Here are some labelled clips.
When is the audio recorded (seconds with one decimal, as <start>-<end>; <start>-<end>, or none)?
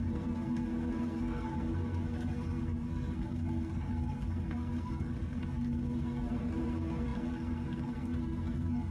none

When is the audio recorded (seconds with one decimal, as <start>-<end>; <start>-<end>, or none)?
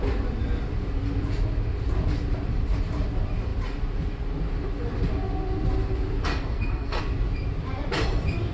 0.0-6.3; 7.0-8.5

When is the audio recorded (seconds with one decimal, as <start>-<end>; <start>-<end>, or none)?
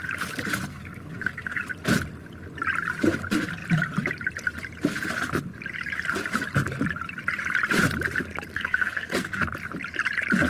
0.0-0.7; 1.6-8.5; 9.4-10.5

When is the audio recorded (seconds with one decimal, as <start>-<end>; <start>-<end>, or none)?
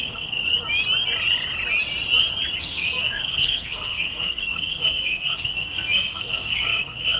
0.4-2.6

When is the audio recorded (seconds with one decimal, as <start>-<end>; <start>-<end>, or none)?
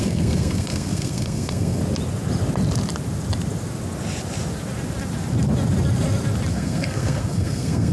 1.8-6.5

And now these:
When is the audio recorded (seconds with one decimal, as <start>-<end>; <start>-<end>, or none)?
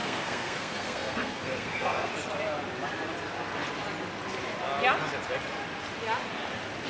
2.1-6.9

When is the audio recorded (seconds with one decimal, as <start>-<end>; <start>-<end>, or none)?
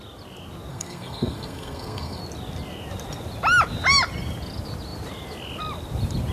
0.0-0.7; 2.2-6.3